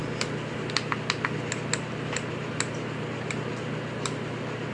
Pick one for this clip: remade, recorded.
recorded